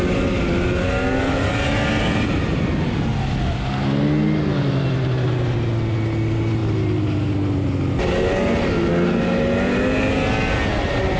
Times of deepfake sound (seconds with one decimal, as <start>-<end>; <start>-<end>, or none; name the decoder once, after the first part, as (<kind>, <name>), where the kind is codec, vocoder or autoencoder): none